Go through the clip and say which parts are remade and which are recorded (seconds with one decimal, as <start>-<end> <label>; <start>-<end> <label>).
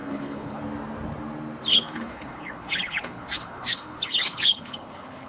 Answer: 0.0-0.6 remade; 0.6-1.7 recorded; 1.7-5.3 remade